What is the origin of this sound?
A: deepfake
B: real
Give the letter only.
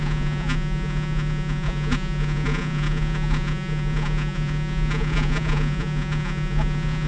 A